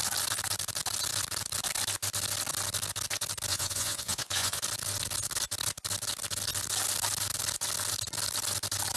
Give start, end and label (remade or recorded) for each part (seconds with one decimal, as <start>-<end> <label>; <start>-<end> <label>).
0.0-3.5 recorded; 3.5-4.6 remade; 4.6-9.0 recorded